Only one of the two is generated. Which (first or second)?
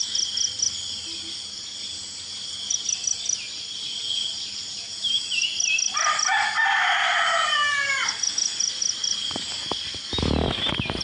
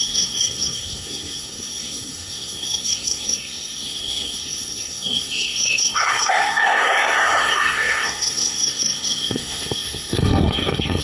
second